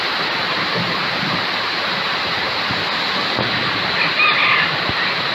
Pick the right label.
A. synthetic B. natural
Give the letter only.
B